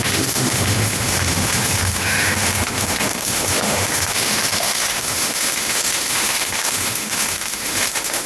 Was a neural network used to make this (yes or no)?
yes